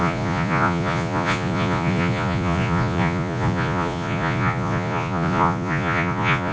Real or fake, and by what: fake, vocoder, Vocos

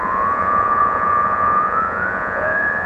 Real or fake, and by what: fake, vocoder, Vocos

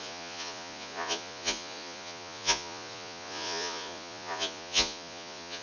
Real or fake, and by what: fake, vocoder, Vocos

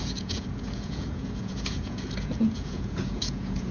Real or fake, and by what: fake, vocoder, Vocos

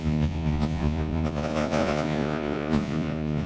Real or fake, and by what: fake, vocoder, Vocos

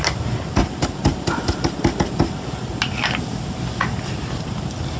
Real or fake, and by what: real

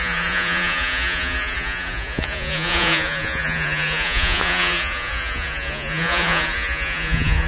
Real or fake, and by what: fake, vocoder, Vocos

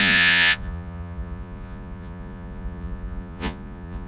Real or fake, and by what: fake, vocoder, Vocos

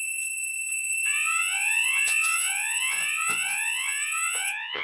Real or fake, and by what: fake, vocoder, Vocos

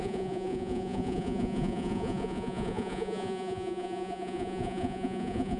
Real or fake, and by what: fake, vocoder, Vocos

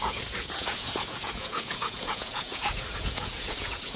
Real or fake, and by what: fake, vocoder, Vocos